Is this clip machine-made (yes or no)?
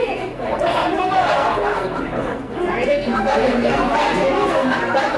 yes